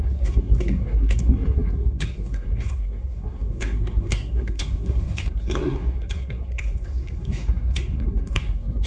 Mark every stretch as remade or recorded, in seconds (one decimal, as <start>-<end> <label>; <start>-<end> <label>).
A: 0.0-8.9 remade